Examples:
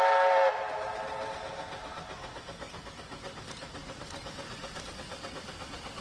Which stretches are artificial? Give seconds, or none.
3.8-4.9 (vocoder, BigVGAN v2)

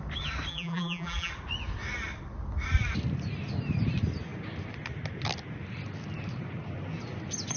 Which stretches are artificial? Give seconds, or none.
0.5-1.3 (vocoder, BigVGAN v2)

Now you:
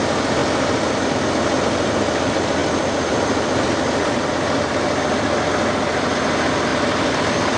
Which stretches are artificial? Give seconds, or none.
0.4-1.2 (vocoder, BigVGAN v2); 2.6-4.7; 6.7-7.6

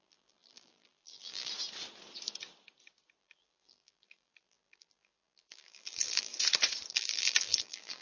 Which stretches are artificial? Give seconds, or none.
0.0-1.5 (vocoder, BigVGAN v2); 3.2-6.3; 6.9-8.0